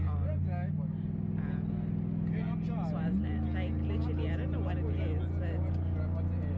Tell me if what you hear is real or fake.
real